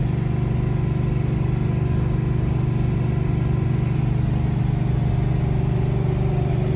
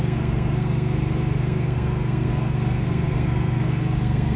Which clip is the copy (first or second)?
second